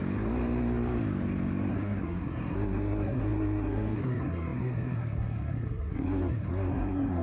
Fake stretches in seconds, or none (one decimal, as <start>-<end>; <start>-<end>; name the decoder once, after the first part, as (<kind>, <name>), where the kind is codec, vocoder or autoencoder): 1.7-7.2 (codec, SNAC)